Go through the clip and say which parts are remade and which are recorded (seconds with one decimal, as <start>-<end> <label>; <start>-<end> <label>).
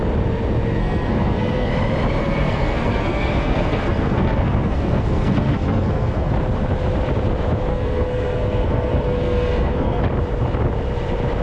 0.0-0.8 recorded; 0.8-1.7 remade; 1.7-2.2 recorded; 2.2-6.3 remade; 6.3-7.7 recorded; 7.7-10.0 remade; 10.0-11.4 recorded